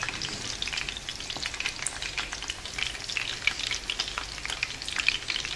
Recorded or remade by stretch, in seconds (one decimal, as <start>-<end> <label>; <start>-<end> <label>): 0.0-5.6 recorded